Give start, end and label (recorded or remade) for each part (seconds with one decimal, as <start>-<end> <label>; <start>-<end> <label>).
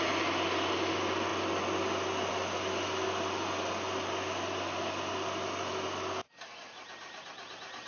0.0-7.9 recorded